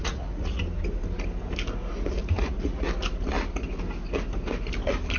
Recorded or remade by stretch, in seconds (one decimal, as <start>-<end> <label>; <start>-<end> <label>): 0.0-0.6 remade; 0.6-2.2 recorded; 2.2-2.9 remade; 2.9-5.2 recorded